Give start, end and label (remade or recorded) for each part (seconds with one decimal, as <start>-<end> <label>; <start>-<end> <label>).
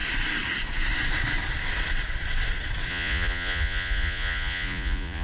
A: 0.0-2.9 recorded; 2.9-5.2 remade